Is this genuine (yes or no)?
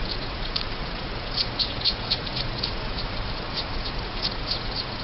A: no